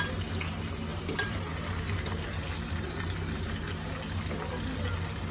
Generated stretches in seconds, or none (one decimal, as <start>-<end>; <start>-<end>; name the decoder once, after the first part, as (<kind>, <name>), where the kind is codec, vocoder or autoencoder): 0.9-3.7 (vocoder, BigVGAN v2)

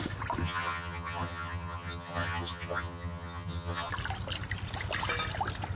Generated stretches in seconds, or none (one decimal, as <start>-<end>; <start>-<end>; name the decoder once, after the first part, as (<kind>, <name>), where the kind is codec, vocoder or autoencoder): 0.4-3.9 (vocoder, HiFi-GAN)

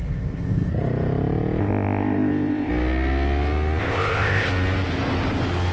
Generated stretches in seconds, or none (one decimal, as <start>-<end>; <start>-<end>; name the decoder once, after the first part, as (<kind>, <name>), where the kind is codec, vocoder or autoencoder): 0.0-0.7 (codec, ZipCodec); 1.6-2.7; 3.8-4.5